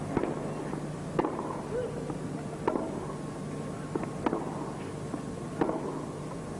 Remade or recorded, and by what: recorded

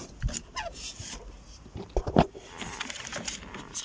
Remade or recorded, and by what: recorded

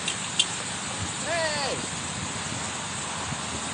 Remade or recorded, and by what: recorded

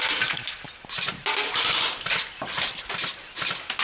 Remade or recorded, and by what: recorded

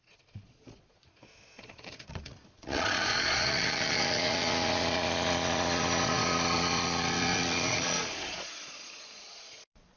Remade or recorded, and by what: remade, vocoder, Vocos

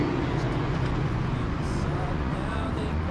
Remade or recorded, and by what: remade, vocoder, Vocos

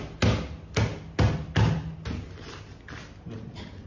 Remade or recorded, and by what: recorded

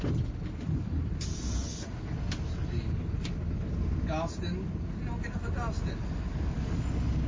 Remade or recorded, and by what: recorded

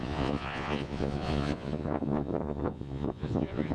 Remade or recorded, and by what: remade, vocoder, Vocos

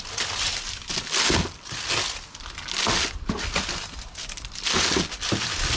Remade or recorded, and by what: recorded